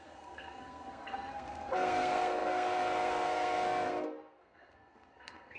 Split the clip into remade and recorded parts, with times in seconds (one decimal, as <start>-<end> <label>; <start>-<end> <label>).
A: 0.0-5.6 remade